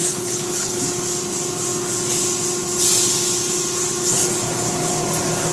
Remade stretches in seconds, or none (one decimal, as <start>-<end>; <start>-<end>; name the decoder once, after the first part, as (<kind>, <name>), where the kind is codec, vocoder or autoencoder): 0.0-0.8 (codec, HILCodec)